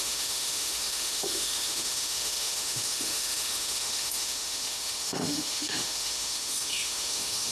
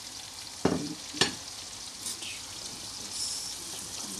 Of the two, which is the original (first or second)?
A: second